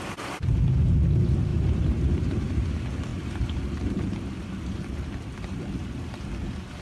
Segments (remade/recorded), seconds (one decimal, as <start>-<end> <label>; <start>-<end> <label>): 0.0-1.5 recorded; 1.5-2.7 remade; 2.7-3.1 recorded; 3.1-4.3 remade; 4.3-6.8 recorded